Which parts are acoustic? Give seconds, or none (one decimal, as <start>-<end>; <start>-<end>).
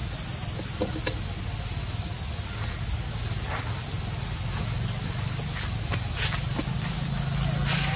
0.0-8.0